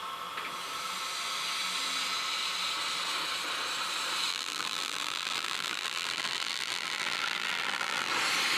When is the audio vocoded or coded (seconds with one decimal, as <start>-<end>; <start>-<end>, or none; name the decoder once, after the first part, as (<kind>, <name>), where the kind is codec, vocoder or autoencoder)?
4.3-8.1 (vocoder, BigVGAN v2)